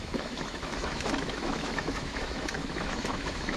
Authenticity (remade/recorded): remade